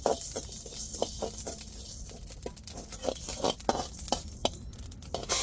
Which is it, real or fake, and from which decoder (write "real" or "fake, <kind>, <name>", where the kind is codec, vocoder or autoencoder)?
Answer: real